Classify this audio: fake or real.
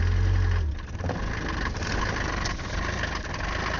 real